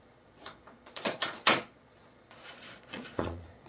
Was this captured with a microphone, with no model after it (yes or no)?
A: no